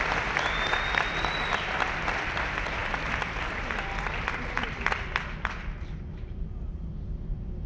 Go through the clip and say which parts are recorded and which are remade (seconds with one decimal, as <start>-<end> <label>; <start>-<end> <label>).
0.0-7.7 recorded